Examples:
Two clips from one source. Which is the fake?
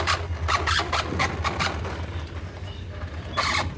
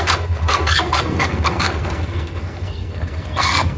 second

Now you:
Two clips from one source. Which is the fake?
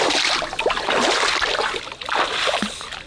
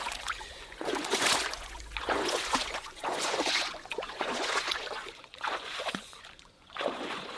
second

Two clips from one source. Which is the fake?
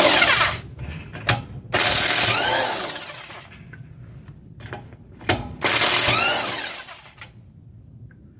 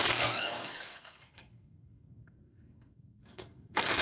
second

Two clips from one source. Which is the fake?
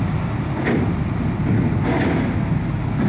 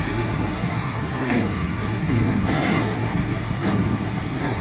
second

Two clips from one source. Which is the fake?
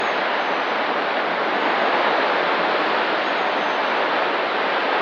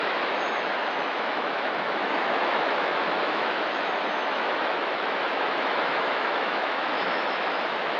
second